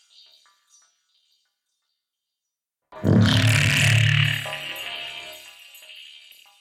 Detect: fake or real real